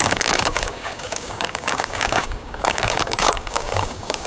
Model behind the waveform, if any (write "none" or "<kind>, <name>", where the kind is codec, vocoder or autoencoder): codec, DAC